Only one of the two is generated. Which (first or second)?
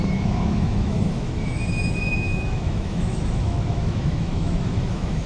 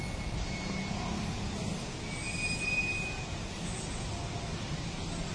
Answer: first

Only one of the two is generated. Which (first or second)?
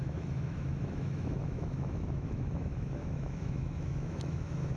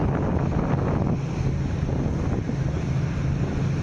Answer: first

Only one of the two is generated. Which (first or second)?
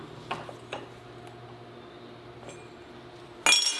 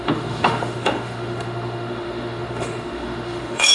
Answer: second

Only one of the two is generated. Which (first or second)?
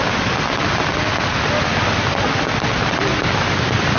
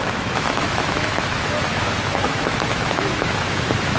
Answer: second